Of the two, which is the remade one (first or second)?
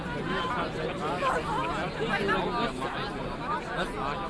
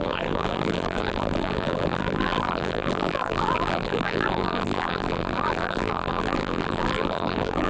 second